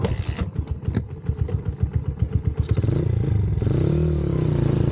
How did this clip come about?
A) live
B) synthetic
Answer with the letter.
A